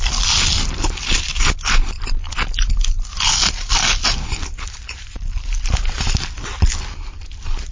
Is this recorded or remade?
recorded